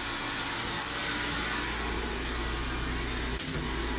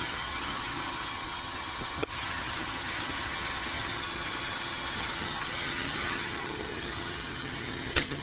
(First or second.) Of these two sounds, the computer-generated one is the second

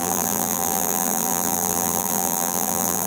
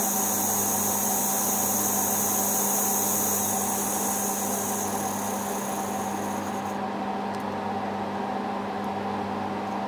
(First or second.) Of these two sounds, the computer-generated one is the first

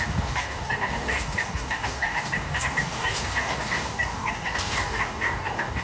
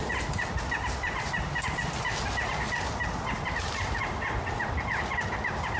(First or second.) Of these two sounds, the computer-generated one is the first